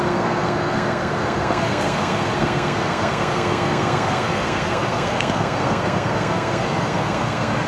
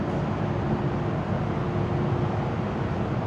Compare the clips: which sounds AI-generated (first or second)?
first